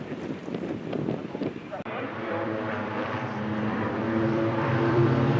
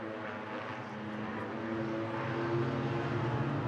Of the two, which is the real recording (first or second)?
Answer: second